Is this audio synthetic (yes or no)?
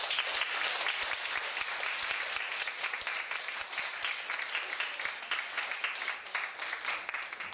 no